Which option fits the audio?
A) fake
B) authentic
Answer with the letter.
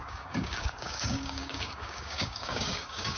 A